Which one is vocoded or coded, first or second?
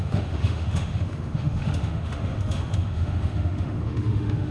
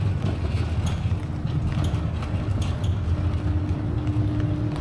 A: first